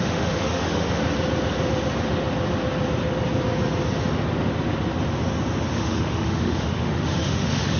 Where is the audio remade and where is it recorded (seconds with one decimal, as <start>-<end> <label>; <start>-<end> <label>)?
0.0-1.0 remade; 1.0-5.7 recorded; 5.7-7.8 remade